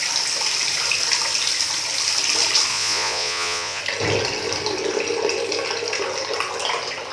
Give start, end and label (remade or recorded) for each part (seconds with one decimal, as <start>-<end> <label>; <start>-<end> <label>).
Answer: 0.0-2.7 recorded; 2.7-3.8 remade; 3.8-7.1 recorded